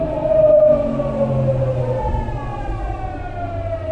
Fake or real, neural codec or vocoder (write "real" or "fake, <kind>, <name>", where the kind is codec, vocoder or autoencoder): real